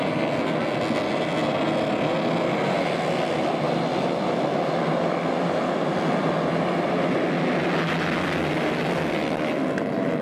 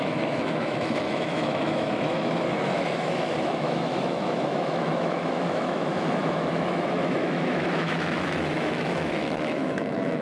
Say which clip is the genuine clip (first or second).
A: first